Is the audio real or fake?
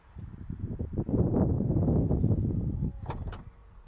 fake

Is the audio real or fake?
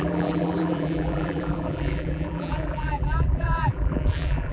fake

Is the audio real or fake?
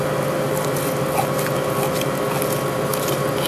real